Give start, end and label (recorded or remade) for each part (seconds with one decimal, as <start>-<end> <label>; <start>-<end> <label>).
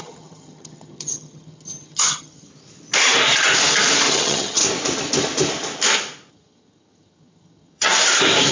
0.0-2.5 remade; 2.5-4.1 recorded; 4.1-4.6 remade; 4.6-6.3 recorded; 6.3-7.9 remade; 7.9-8.5 recorded